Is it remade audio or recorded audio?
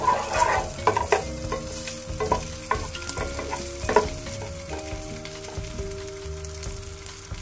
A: recorded